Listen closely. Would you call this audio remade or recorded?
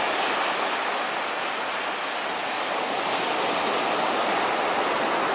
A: recorded